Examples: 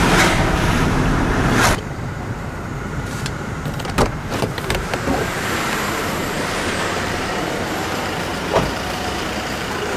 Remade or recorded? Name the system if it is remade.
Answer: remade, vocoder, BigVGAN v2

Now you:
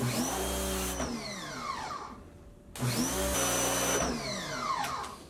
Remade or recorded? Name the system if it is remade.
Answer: recorded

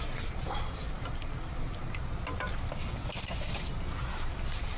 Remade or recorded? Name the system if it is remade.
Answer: recorded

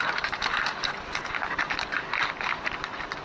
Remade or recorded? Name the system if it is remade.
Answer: recorded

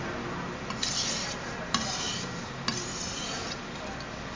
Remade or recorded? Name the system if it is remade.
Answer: remade, vocoder, BigVGAN v2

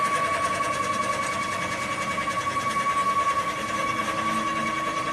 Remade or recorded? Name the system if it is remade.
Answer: recorded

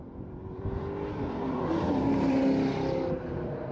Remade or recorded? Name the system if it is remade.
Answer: remade, vocoder, BigVGAN v2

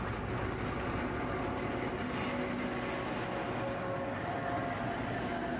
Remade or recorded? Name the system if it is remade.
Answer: recorded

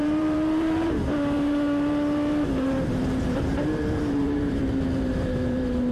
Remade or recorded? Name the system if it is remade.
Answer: remade, vocoder, BigVGAN v2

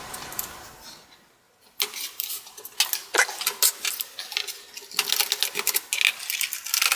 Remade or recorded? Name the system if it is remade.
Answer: recorded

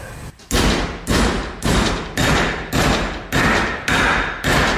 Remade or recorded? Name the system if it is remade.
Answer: recorded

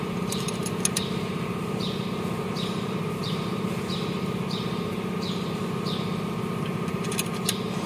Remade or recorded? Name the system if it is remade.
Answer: recorded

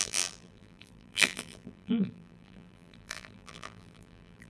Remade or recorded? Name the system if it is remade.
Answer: remade, vocoder, BigVGAN v2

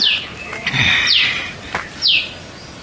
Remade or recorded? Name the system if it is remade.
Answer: recorded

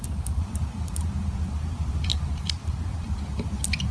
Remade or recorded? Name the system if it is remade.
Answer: remade, vocoder, BigVGAN v2